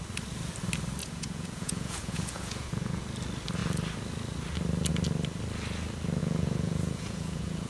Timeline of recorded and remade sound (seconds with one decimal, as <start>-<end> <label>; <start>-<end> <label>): 0.0-1.0 recorded; 1.0-3.0 remade; 3.0-6.2 recorded; 6.2-7.7 remade